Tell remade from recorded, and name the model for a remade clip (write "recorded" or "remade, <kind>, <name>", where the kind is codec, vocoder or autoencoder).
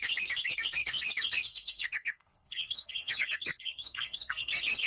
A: remade, codec, SNAC